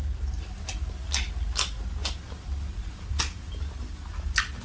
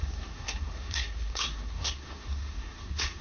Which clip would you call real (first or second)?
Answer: first